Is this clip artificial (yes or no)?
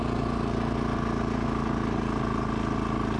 no